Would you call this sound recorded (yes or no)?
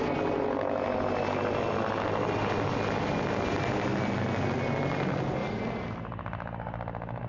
yes